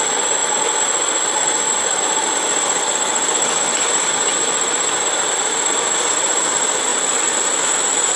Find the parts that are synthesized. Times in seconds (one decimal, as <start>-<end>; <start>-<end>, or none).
none